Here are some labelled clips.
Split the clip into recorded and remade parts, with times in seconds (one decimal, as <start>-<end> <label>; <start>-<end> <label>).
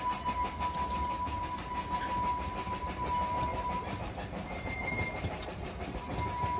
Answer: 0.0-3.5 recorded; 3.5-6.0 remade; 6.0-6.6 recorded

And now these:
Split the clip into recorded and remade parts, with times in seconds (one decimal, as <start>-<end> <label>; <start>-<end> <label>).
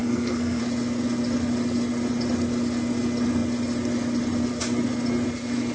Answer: 0.0-0.6 remade; 0.6-5.7 recorded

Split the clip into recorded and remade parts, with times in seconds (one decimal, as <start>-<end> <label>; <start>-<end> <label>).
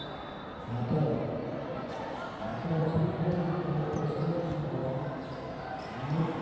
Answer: 0.0-1.4 recorded; 1.4-2.0 remade; 2.0-2.5 recorded; 2.5-3.1 remade; 3.1-6.4 recorded